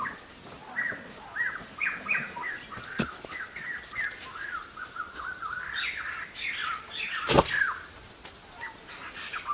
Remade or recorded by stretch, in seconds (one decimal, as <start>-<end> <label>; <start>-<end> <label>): 0.0-9.5 recorded